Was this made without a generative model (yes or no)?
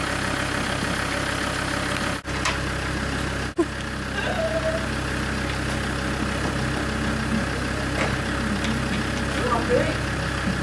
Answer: yes